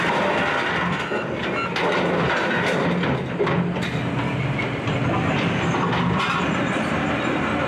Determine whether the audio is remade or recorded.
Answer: recorded